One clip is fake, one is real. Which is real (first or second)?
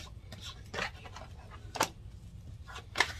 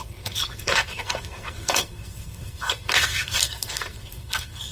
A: first